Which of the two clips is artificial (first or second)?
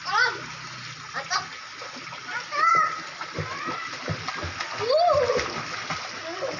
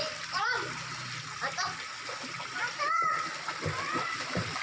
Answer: second